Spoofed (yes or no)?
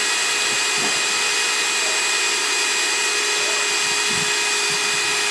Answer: no